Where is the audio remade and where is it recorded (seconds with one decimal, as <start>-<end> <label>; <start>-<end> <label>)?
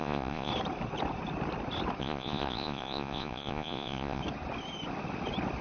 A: 0.0-0.5 remade; 0.5-2.0 recorded; 2.0-4.2 remade; 4.2-5.6 recorded